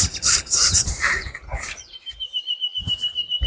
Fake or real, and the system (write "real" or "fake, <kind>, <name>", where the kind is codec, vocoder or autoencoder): fake, vocoder, BigVGAN v2